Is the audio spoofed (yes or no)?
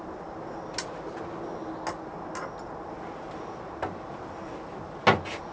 no